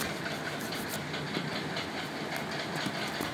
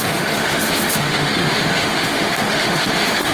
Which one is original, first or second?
first